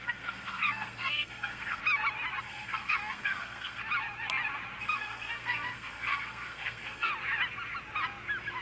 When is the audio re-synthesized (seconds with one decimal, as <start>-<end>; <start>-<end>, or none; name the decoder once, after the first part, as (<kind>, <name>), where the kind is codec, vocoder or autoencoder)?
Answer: 0.0-1.8 (codec, SNAC); 2.4-3.8; 4.8-7.1